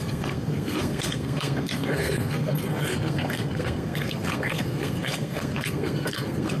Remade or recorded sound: remade